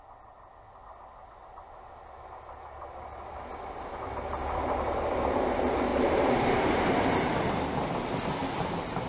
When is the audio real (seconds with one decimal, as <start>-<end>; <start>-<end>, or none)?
0.0-9.1

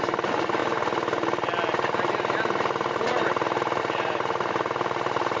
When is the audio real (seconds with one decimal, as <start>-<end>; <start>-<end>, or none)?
0.6-3.8

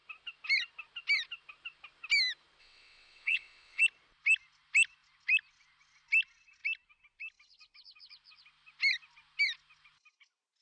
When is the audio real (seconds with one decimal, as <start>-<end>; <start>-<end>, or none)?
0.0-2.6; 3.8-10.6

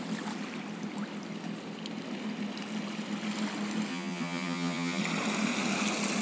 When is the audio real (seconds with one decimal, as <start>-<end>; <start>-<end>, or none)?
0.0-3.9; 5.0-6.2

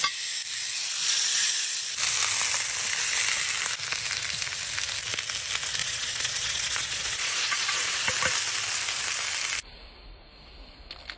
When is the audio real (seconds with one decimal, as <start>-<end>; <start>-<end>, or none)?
0.0-1.0; 1.7-5.8; 8.1-11.2

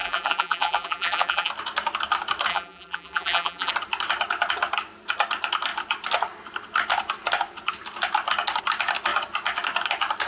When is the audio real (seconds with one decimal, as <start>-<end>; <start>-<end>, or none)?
1.5-2.5; 3.7-10.3

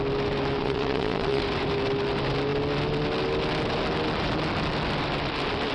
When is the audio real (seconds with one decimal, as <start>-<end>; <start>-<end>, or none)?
0.0-0.6; 1.4-5.7

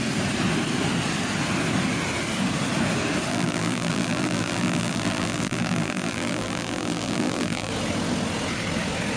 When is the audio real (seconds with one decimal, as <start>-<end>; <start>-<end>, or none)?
0.0-3.3; 7.7-9.2